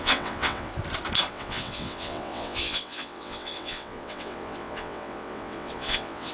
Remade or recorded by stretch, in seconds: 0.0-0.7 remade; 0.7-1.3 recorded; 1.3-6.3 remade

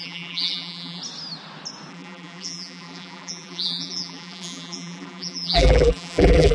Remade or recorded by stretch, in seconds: 0.0-1.0 remade; 1.0-1.9 recorded; 1.9-6.5 remade